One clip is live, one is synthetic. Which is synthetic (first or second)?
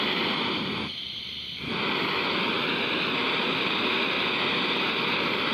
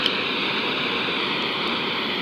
second